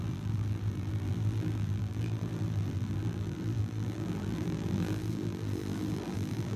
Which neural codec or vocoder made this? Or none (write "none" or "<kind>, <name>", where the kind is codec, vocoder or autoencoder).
vocoder, BigVGAN v2